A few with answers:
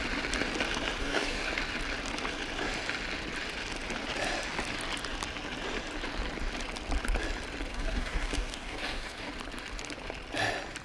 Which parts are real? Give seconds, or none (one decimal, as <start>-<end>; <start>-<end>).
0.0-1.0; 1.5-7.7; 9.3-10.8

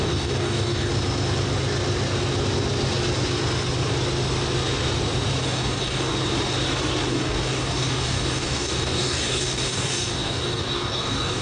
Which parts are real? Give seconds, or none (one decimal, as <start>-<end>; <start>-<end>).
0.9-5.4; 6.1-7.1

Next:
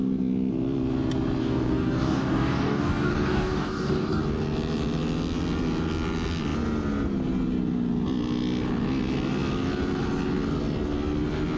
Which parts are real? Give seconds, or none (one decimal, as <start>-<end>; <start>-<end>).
0.0-1.4; 4.2-11.6

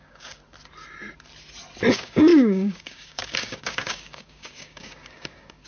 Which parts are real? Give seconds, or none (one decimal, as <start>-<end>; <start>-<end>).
0.4-1.9